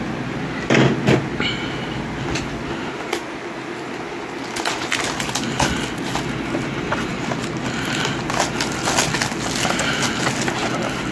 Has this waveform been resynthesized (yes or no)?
no